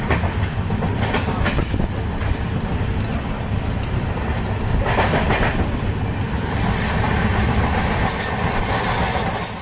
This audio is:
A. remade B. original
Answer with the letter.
B